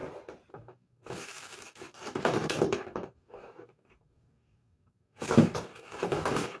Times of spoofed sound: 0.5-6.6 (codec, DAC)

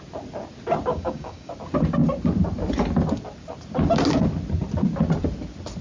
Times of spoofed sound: 0.9-1.5 (codec, DAC)

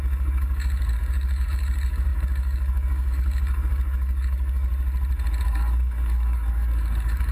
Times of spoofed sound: 0.0-4.7 (codec, DAC); 5.4-7.3

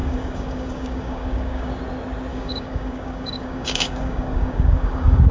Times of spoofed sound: 0.0-1.8 (codec, DAC); 2.3-5.3

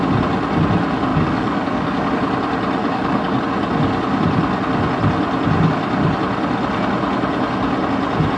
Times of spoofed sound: 1.1-2.1 (codec, DAC); 2.8-3.4

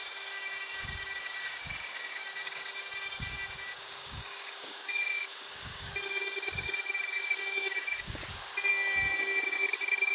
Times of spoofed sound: 0.0-8.2 (codec, DAC); 8.7-10.1